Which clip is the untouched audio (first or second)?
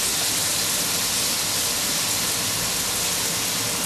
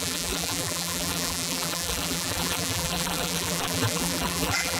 first